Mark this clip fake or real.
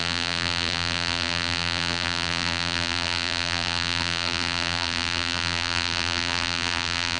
fake